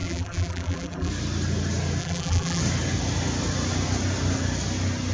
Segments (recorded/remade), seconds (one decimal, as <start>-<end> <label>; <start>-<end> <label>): 0.0-1.1 remade; 1.1-2.0 recorded; 2.0-2.6 remade; 2.6-5.1 recorded